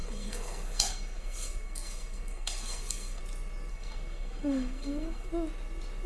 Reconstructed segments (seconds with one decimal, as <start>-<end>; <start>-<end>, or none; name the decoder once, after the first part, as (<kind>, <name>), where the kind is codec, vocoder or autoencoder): 0.0-3.2 (codec, SNAC); 3.7-5.3